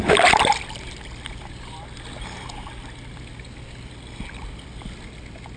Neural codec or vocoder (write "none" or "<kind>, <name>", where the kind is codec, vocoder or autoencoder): none